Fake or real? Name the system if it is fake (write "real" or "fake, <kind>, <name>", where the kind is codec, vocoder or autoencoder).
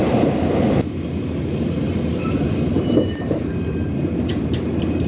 fake, vocoder, BigVGAN v2